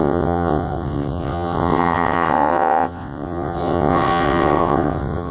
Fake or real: fake